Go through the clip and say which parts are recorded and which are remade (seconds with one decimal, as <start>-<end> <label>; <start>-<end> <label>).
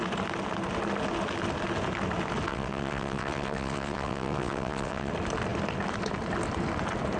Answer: 0.0-2.5 recorded; 2.5-5.1 remade; 5.1-7.2 recorded